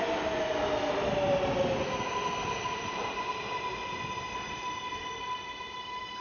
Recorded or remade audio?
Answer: recorded